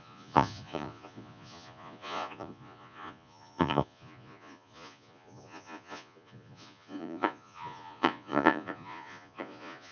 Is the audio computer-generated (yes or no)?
yes